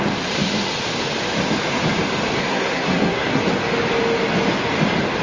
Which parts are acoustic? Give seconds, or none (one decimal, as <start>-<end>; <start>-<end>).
0.0-2.4; 3.4-5.2